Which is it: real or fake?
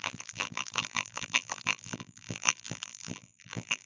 fake